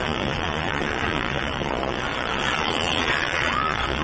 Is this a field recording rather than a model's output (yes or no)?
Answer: no